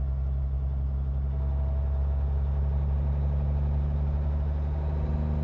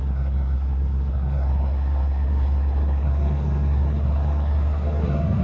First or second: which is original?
first